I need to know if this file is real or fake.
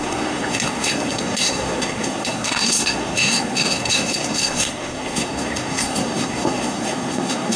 fake